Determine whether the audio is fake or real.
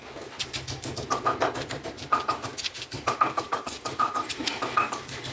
real